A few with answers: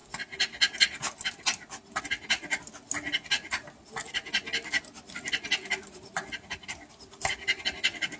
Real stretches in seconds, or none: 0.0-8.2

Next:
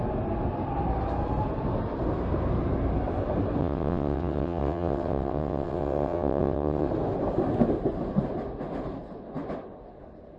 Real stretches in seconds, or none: 0.0-3.6; 6.9-10.4

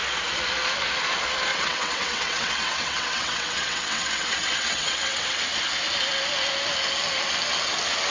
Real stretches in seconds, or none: 0.0-1.5; 5.4-8.1

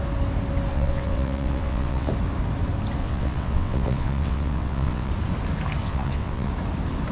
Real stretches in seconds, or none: 0.0-0.7; 2.1-3.0; 5.1-5.8; 6.5-7.1

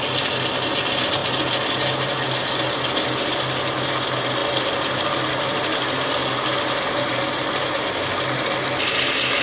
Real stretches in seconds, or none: 0.0-9.4

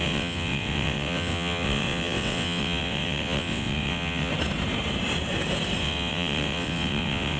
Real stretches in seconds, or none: 4.3-5.8

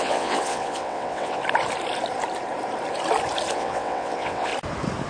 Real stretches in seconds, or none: 1.4-3.5; 4.5-5.1

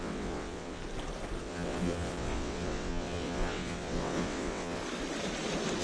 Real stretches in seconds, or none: 0.8-1.4; 4.8-5.8